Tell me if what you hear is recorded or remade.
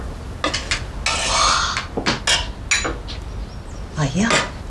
recorded